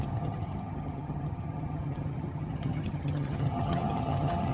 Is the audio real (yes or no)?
no